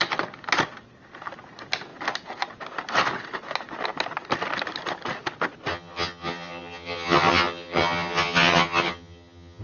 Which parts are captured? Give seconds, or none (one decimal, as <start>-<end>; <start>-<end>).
0.0-5.7